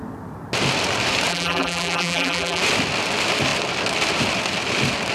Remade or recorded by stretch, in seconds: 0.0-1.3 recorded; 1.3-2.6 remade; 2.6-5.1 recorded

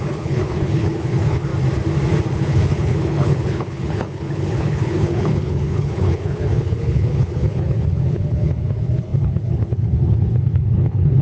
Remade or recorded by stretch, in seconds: 0.0-1.5 remade; 1.5-2.3 recorded; 2.3-11.2 remade

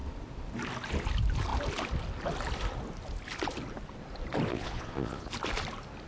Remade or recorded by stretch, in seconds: 0.0-4.5 recorded; 4.5-5.3 remade; 5.3-6.1 recorded

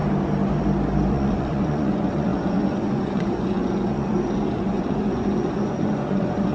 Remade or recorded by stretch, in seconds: 0.0-1.1 recorded; 1.1-6.5 remade

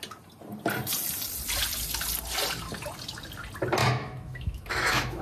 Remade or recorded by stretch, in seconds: 0.0-3.8 recorded; 3.8-5.2 remade

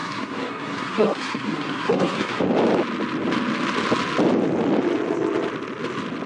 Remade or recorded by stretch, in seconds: 0.0-2.4 remade; 2.4-6.3 recorded

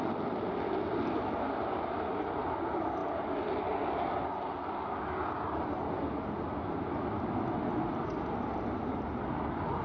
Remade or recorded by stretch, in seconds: 0.0-9.8 recorded